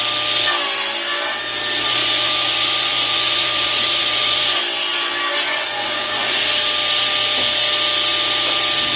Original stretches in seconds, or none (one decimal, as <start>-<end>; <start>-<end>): 0.0-2.0; 4.6-5.5; 6.4-9.0